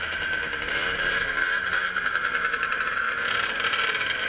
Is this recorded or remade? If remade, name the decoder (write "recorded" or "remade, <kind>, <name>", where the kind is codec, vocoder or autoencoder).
remade, vocoder, BigVGAN v2